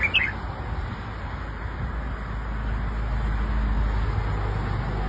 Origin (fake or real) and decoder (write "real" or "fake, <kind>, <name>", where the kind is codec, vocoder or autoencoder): real